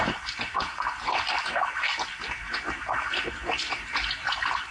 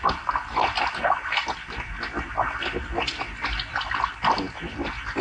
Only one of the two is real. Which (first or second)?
second